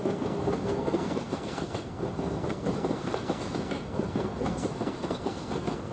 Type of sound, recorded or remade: remade